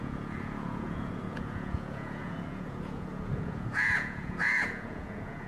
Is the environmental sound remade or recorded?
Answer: remade